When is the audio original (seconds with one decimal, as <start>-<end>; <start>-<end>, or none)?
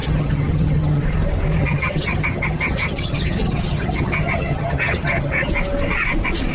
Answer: 1.0-1.6; 5.5-6.5